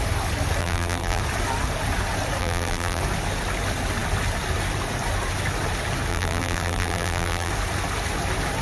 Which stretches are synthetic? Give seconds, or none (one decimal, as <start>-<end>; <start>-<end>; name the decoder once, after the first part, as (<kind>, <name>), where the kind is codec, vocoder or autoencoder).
0.6-1.2 (vocoder, BigVGAN v2); 2.4-3.0; 6.1-7.5